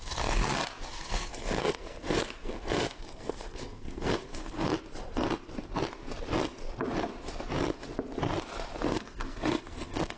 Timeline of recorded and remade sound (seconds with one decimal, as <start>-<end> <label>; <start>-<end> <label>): 0.0-0.4 remade; 0.4-0.9 recorded; 0.9-4.7 remade; 4.7-8.9 recorded; 8.9-10.2 remade